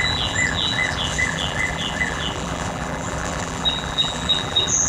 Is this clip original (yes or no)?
no